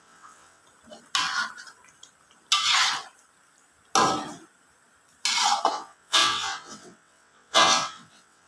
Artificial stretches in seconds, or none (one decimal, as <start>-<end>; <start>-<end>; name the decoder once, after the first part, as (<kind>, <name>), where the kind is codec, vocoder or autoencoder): 0.0-0.6 (vocoder, WaveNeXt); 5.7-8.5